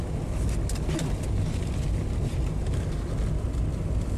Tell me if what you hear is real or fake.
real